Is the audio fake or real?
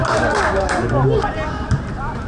real